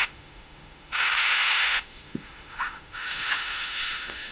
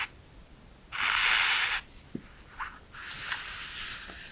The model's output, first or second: first